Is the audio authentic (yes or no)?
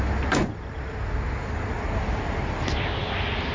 yes